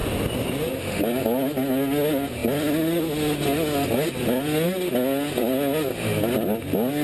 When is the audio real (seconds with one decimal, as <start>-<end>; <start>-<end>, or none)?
0.0-7.0

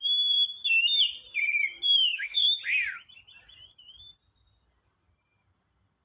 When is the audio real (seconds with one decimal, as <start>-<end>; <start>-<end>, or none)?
0.0-2.1; 2.6-6.0

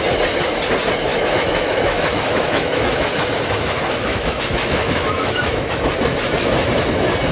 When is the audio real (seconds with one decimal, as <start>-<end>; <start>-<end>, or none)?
0.0-1.1; 3.1-4.1; 5.9-7.3

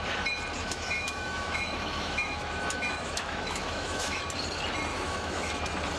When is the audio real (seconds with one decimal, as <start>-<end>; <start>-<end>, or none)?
0.0-0.6; 4.2-4.9; 5.5-6.0

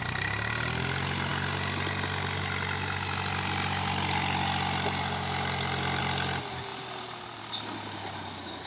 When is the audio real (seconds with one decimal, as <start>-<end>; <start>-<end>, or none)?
0.0-8.7